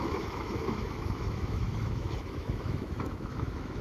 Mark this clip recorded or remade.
remade